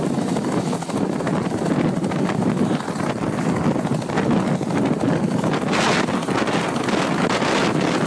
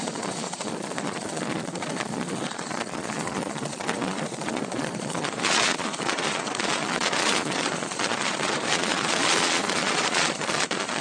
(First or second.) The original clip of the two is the first